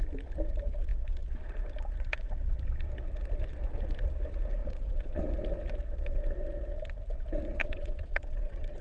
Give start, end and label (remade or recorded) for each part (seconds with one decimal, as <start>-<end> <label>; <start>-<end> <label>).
0.0-4.6 recorded; 4.6-5.2 remade; 5.2-7.6 recorded; 7.6-8.8 remade